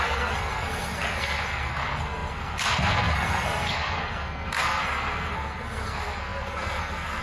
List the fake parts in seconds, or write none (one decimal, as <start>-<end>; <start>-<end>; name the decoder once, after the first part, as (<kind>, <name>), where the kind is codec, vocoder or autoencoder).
0.0-7.2 (codec, SNAC)